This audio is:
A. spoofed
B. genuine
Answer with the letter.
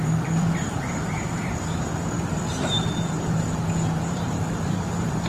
A